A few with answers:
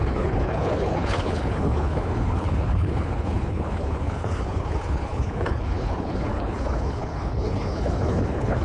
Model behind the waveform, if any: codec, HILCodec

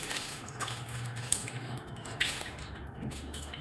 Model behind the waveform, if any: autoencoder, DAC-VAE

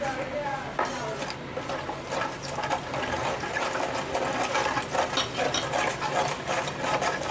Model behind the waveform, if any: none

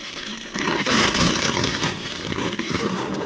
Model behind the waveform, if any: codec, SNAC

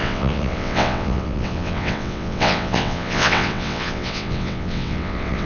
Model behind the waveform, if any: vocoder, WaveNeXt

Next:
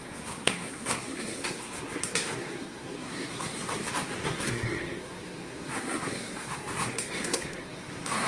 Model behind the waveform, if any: codec, SNAC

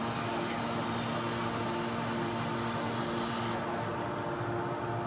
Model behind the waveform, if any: none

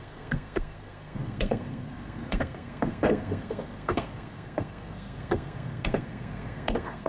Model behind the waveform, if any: codec, SNAC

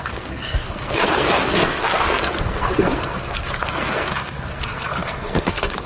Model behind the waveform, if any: codec, SNAC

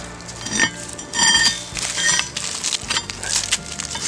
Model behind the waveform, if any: none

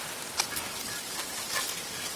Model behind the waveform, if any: none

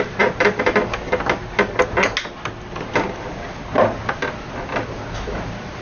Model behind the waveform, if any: none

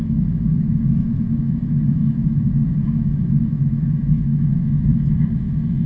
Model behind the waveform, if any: autoencoder, DAC-VAE